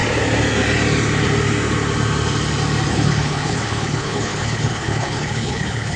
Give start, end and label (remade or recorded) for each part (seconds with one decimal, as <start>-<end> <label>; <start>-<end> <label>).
0.0-2.9 recorded; 2.9-6.0 remade